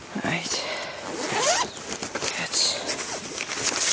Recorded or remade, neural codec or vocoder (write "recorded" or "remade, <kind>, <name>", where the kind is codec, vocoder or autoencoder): recorded